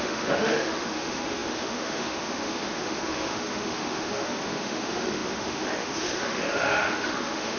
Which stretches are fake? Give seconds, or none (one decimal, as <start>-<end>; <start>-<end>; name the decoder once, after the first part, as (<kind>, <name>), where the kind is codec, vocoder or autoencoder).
0.0-7.6 (autoencoder, DAC-VAE)